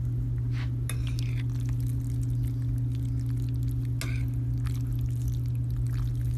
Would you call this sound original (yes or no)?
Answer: yes